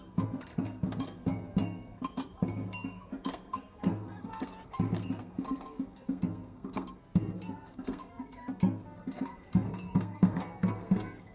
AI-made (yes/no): yes